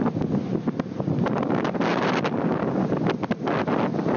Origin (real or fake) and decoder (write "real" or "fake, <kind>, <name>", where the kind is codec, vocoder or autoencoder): real